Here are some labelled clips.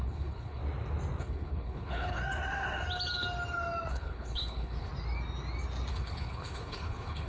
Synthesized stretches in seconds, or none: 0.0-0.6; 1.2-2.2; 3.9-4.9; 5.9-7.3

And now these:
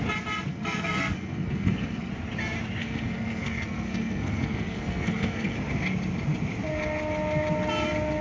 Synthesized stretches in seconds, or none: 0.5-2.1; 2.8-5.6

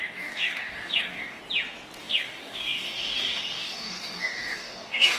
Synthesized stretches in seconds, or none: 0.0-1.4; 2.0-5.2

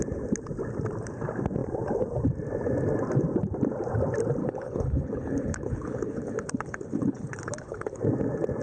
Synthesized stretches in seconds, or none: 4.4-8.0

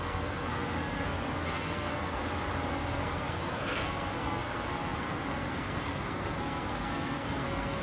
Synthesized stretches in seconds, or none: 0.0-2.2; 2.7-7.8